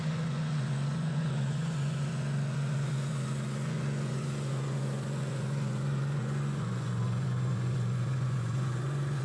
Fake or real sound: fake